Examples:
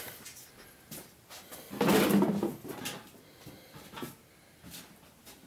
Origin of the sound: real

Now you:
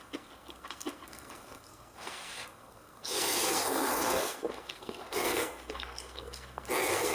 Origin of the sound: fake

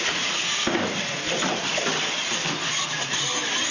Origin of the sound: real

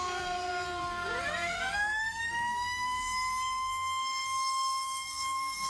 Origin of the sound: fake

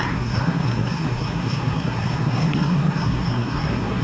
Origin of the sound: fake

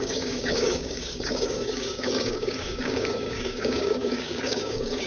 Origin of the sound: fake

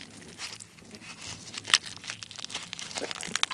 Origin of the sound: real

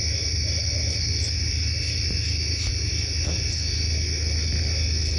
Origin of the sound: real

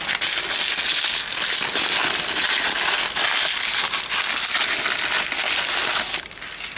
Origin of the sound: real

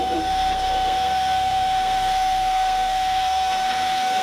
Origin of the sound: fake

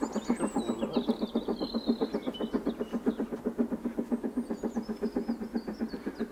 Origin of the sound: real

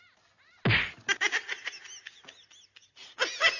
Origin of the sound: real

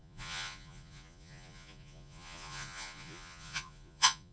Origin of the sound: fake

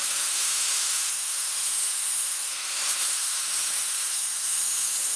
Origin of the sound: fake